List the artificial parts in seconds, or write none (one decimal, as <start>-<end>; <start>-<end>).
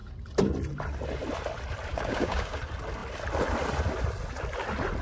1.9-2.6